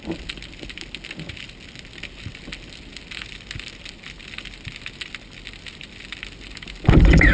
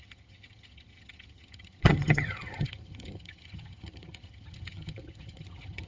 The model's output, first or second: second